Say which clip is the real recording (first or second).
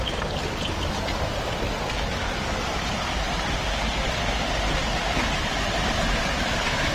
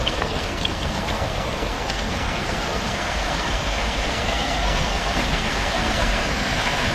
first